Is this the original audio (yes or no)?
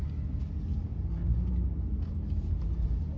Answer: yes